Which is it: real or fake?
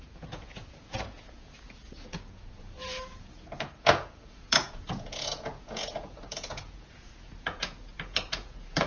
fake